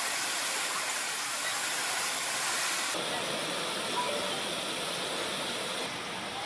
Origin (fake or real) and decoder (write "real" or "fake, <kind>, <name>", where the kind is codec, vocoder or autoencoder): real